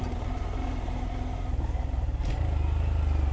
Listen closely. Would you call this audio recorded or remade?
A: recorded